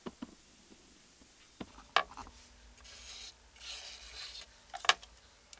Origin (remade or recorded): recorded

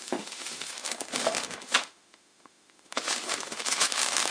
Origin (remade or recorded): remade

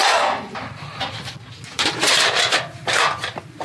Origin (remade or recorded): recorded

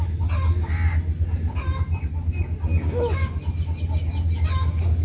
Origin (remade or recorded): recorded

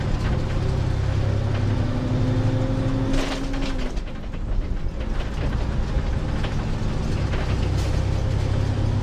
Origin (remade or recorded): recorded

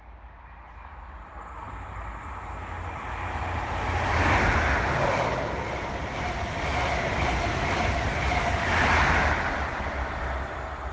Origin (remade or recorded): recorded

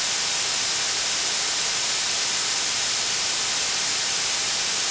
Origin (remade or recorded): recorded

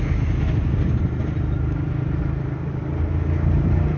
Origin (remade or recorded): recorded